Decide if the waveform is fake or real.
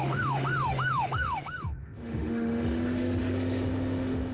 fake